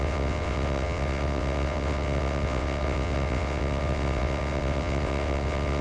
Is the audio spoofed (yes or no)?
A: yes